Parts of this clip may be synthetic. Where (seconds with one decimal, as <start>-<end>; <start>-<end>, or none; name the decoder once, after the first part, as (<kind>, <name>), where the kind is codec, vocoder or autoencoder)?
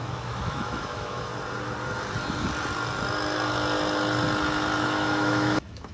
0.0-1.3 (autoencoder, DAC-VAE); 4.8-5.9